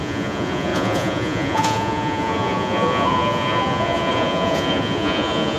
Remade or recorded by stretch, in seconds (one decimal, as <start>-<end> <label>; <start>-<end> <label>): 0.0-5.6 remade